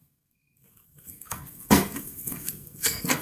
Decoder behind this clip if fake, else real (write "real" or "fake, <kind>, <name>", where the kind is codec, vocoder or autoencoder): fake, codec, SNAC